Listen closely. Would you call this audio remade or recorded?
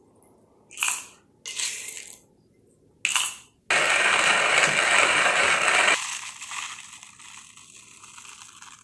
recorded